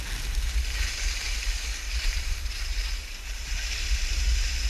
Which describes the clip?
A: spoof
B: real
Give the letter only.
B